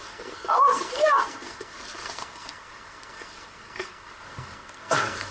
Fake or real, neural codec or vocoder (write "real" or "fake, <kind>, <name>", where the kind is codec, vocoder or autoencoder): fake, codec, SNAC